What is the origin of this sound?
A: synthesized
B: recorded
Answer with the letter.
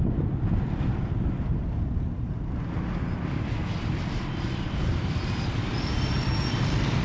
B